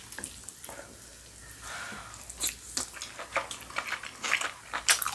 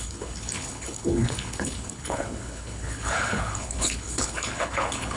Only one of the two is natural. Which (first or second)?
first